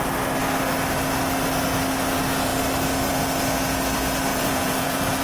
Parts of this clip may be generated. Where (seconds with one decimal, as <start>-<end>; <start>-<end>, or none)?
4.3-5.2